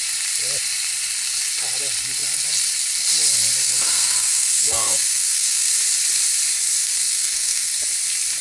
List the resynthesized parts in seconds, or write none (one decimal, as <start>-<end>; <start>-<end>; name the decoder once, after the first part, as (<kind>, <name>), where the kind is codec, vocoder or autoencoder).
3.6-5.7 (codec, SNAC); 6.8-7.8